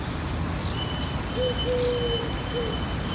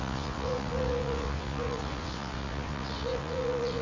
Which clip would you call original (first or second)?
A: first